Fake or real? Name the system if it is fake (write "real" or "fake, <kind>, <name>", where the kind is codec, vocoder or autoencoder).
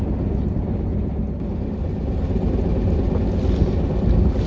real